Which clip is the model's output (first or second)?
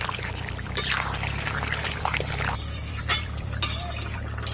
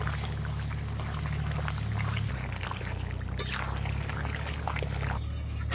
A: first